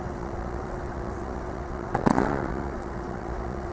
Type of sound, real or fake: fake